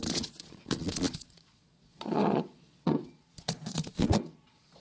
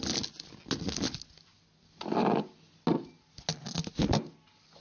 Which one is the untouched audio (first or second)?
second